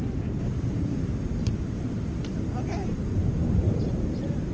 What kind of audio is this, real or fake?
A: fake